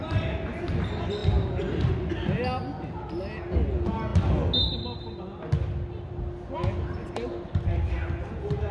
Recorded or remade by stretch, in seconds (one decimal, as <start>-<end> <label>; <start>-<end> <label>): 0.0-1.2 recorded; 1.2-1.9 remade; 1.9-8.7 recorded